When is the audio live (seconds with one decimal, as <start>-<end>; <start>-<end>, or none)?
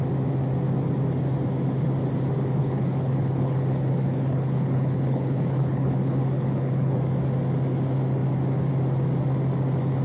0.0-2.6; 7.0-10.0